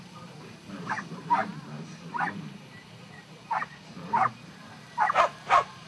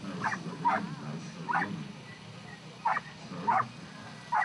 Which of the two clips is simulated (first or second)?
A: first